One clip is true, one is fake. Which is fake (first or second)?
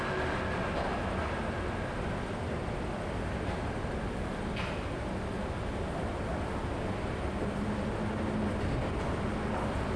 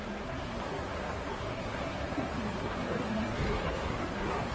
second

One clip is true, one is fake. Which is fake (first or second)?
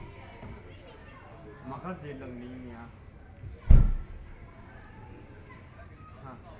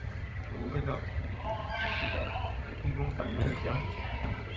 second